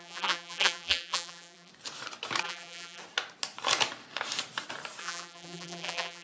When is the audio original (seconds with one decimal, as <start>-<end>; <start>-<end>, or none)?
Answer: 1.7-2.4; 3.0-5.0